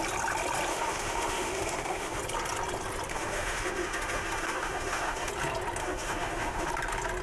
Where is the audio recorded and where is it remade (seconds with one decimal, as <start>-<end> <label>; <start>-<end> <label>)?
0.0-0.7 recorded; 0.7-2.2 remade; 2.2-3.1 recorded; 3.1-5.3 remade; 5.3-5.8 recorded; 5.8-6.7 remade; 6.7-7.2 recorded